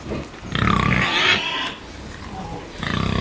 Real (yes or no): yes